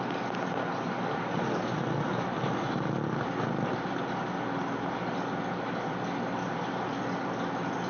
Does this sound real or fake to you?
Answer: real